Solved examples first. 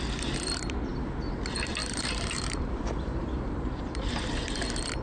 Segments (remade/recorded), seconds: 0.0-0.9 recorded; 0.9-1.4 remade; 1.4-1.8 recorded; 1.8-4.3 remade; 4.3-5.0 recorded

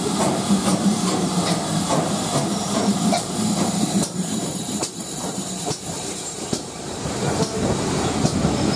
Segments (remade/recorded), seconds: 0.0-0.7 recorded; 0.7-1.4 remade; 1.4-2.6 recorded; 2.6-7.4 remade; 7.4-8.8 recorded

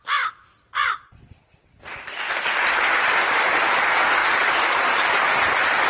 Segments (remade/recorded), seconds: 0.0-0.4 recorded; 0.4-1.1 remade; 1.1-4.2 recorded; 4.2-5.2 remade; 5.2-5.9 recorded

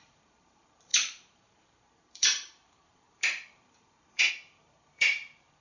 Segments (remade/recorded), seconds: 0.0-5.6 remade